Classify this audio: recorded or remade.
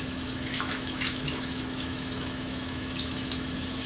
remade